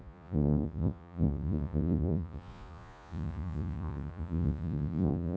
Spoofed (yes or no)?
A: yes